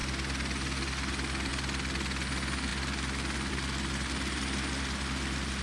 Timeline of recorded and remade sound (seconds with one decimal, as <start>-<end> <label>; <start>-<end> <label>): 0.0-5.6 recorded

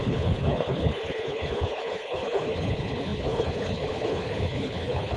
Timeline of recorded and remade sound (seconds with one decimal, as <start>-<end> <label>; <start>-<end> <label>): 0.0-5.2 remade

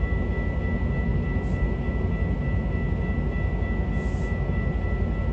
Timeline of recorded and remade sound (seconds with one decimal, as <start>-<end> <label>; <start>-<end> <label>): 0.0-5.3 recorded

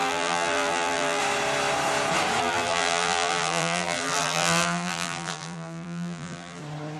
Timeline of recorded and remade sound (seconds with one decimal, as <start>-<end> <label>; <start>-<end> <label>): 0.0-1.2 remade; 1.2-2.4 recorded; 2.4-6.6 remade; 6.6-7.0 recorded

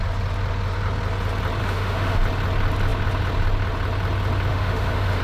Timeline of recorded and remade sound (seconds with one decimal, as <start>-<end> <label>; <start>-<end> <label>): 0.0-1.6 recorded; 1.6-2.2 remade; 2.2-4.5 recorded; 4.5-5.2 remade

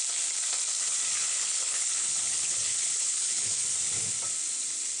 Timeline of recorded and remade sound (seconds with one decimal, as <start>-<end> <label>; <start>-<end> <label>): 0.0-1.2 recorded; 1.2-3.6 remade; 3.6-5.0 recorded

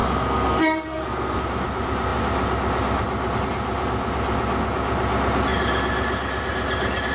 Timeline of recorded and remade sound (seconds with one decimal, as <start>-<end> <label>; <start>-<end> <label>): 0.0-1.4 remade; 1.4-7.1 recorded

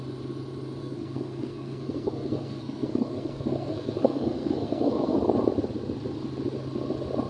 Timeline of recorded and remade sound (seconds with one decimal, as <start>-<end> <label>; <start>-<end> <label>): 0.0-0.8 recorded; 0.8-5.2 remade; 5.2-7.3 recorded